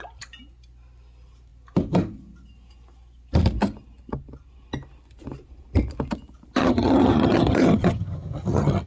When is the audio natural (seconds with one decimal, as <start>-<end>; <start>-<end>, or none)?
0.0-6.6